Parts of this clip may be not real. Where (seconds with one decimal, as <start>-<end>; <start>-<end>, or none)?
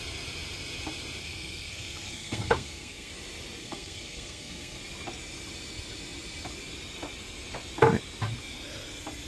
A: 1.2-3.1; 3.6-4.8